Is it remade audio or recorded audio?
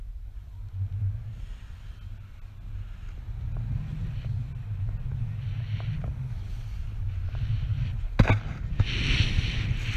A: recorded